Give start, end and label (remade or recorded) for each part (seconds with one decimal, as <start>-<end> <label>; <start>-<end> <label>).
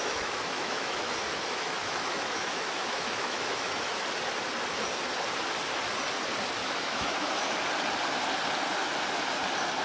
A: 0.0-4.0 remade; 4.0-6.6 recorded; 6.6-7.5 remade; 7.5-9.8 recorded